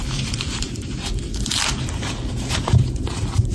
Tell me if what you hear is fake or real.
fake